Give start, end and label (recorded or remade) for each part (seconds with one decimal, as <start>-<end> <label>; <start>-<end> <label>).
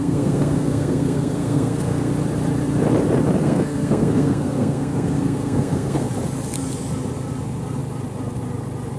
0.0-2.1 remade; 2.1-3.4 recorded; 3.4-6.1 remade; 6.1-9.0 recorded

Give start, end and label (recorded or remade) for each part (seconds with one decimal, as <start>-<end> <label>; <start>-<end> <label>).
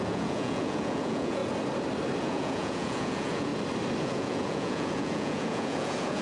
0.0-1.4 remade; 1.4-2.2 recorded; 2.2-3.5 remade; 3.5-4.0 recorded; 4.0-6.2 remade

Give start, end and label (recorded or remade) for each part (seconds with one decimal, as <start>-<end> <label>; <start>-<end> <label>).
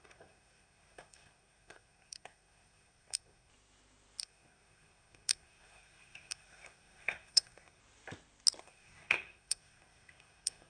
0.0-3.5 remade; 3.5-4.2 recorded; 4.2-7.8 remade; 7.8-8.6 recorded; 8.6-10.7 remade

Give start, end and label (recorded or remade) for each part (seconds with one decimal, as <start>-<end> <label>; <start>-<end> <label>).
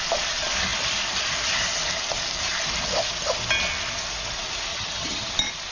0.0-4.7 recorded; 4.7-5.3 remade; 5.3-5.7 recorded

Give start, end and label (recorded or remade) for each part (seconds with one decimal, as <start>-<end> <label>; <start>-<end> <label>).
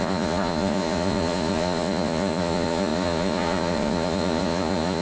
0.0-5.0 remade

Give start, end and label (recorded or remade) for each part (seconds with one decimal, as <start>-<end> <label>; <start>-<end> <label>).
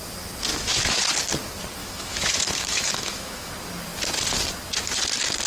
0.0-0.5 recorded; 0.5-1.0 remade; 1.0-1.8 recorded; 1.8-3.5 remade; 3.5-5.5 recorded